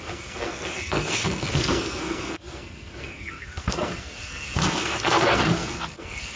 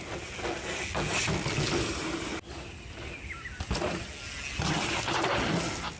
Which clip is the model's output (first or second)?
first